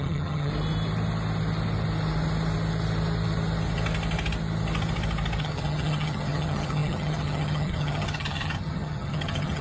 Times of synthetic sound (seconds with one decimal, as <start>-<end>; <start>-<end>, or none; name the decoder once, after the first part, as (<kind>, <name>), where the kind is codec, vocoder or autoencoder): 0.0-0.5 (vocoder, HiFi-GAN); 5.4-9.6